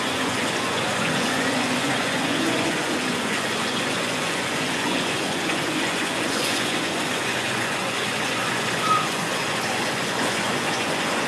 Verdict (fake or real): fake